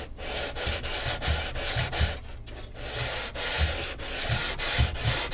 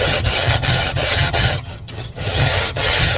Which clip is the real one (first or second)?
first